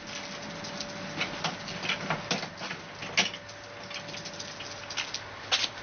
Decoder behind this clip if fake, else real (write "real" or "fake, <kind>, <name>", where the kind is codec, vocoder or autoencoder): real